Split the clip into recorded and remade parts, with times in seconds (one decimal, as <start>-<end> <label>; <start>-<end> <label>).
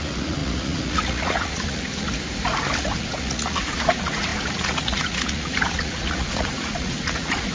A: 0.0-2.1 remade; 2.1-2.8 recorded; 2.8-7.5 remade